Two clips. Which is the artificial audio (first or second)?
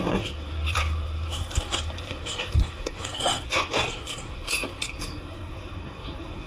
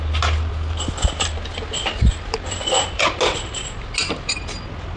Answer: first